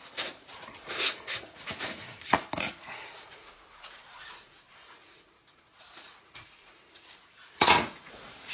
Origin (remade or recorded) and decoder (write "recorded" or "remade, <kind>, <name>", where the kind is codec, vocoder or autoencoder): remade, vocoder, Vocos